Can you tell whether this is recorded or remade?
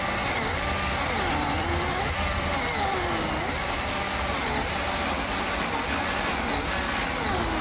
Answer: recorded